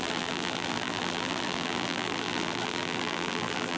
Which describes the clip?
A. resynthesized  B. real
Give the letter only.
A